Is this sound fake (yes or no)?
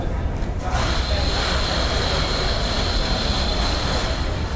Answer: no